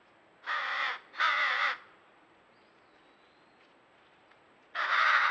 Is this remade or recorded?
remade